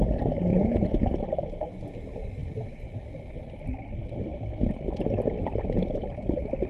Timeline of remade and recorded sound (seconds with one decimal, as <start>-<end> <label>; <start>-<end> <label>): 0.0-0.5 recorded; 0.5-1.1 remade; 1.1-6.7 recorded